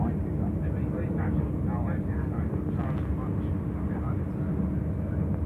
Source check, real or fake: real